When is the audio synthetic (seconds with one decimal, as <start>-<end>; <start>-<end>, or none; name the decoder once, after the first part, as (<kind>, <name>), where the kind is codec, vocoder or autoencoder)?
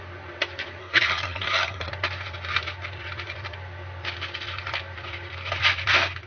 0.8-1.9 (codec, SNAC)